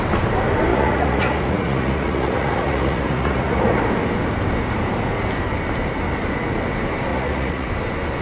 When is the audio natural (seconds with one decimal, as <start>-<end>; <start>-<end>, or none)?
0.0-0.7; 3.8-7.1; 7.7-8.2